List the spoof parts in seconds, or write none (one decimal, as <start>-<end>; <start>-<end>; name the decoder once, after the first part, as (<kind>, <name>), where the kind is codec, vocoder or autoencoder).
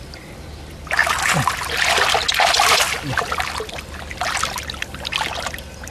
none